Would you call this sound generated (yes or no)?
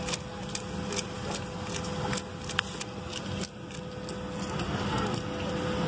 no